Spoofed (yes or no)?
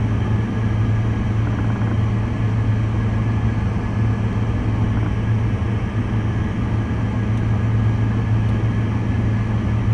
no